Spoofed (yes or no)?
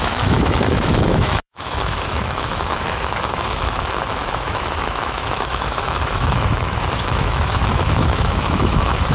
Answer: yes